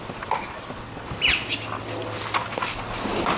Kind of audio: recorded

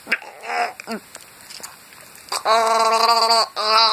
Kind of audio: recorded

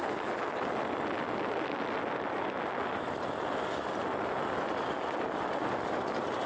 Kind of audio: recorded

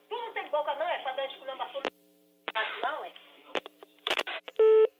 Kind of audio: remade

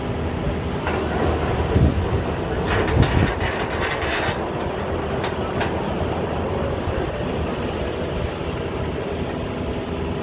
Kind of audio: recorded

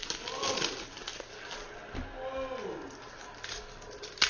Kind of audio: recorded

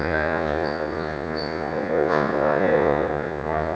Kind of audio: remade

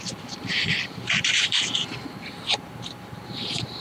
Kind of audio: remade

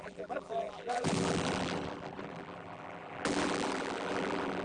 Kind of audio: remade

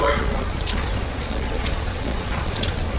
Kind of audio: remade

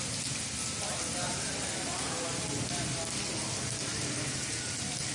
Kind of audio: recorded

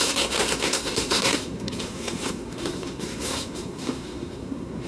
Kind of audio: remade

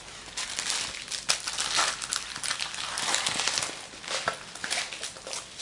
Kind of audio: recorded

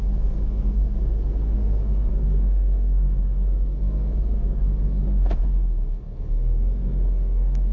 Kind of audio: remade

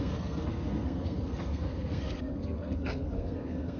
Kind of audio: remade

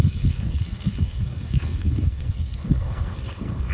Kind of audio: remade